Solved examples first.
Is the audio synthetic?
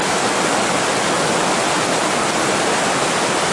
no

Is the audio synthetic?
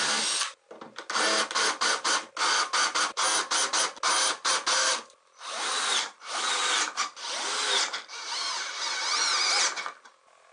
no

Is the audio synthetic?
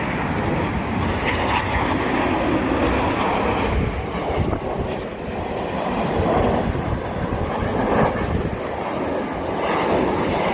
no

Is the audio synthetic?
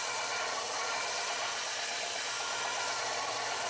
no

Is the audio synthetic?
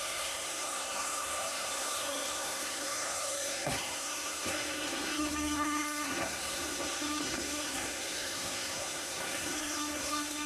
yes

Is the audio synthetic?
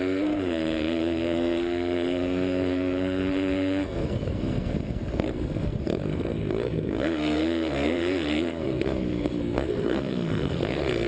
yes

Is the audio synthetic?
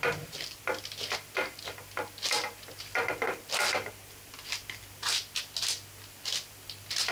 no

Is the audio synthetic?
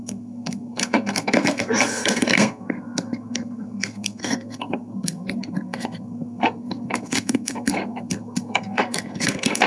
yes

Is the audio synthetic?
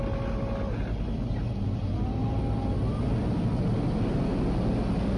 no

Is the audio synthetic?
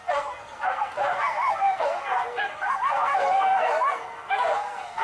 yes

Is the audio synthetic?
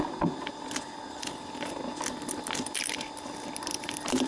no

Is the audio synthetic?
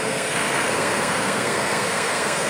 yes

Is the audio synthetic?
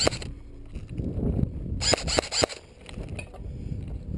no